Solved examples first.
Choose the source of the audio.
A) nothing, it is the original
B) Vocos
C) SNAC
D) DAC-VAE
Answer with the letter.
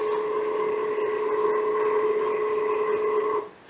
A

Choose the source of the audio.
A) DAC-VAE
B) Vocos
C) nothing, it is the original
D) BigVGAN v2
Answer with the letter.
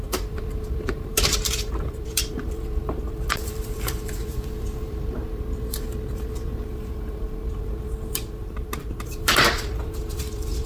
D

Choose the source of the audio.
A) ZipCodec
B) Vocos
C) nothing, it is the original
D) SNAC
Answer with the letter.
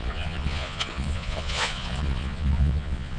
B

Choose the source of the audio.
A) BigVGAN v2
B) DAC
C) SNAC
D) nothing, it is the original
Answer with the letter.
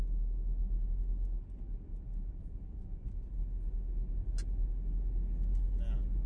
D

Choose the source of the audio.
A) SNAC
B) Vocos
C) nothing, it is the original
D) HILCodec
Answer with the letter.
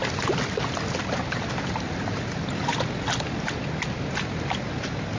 C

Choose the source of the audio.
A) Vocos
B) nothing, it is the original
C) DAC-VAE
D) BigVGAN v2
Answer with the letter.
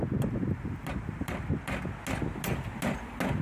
B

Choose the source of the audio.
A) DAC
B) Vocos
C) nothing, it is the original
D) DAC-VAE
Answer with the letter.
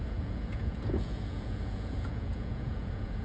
B